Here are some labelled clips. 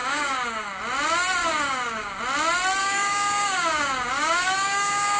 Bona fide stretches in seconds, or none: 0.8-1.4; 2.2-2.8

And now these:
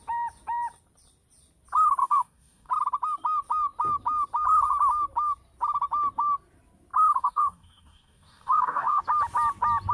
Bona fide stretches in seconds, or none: 0.0-2.0; 2.7-7.2; 9.0-9.9

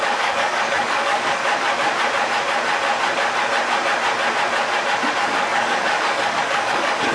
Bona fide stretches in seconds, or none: 1.4-5.1

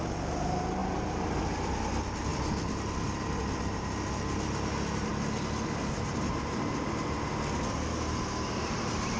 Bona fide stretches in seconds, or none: 0.0-9.2

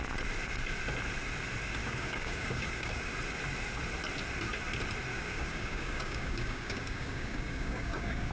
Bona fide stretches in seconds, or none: 0.0-1.8; 3.1-5.1

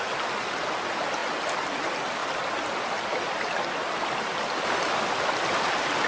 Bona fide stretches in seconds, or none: 0.0-6.1

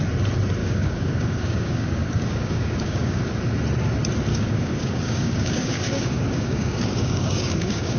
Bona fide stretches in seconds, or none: 0.0-0.6; 3.2-4.3